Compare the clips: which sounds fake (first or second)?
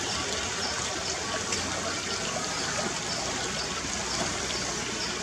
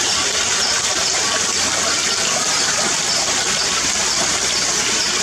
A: second